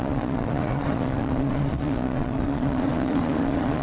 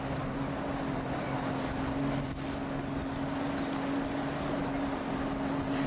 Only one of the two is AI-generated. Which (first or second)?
first